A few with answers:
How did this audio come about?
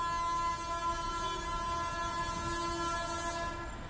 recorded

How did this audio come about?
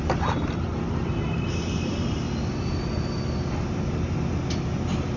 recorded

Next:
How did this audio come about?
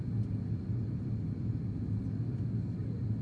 recorded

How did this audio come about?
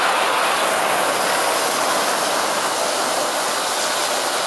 recorded